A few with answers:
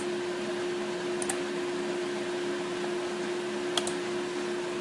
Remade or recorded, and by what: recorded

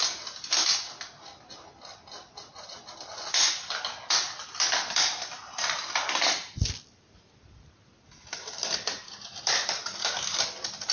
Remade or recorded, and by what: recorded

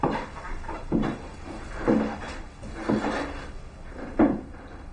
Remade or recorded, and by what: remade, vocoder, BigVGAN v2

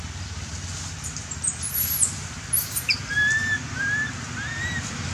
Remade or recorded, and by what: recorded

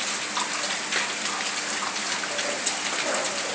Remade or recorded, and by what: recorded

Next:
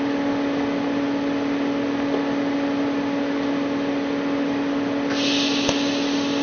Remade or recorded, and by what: recorded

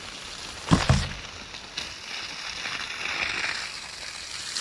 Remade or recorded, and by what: recorded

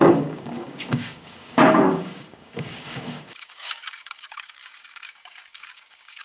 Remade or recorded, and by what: remade, codec, DAC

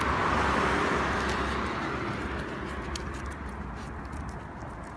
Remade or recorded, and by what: recorded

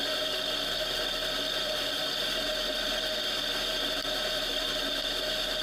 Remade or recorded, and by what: remade, vocoder, BigVGAN v2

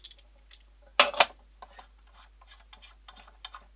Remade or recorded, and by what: recorded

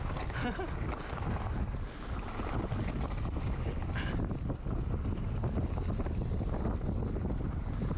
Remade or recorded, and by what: recorded